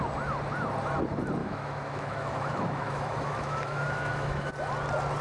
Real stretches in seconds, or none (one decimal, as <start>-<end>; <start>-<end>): 0.0-1.4; 4.5-5.2